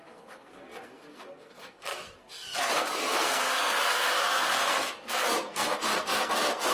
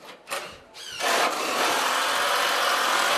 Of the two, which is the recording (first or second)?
second